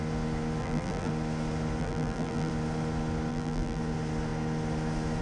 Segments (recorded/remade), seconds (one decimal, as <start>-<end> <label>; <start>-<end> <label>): 0.0-0.6 recorded; 0.6-1.1 remade; 1.1-1.8 recorded; 1.8-2.5 remade; 2.5-3.3 recorded; 3.3-3.8 remade; 3.8-5.2 recorded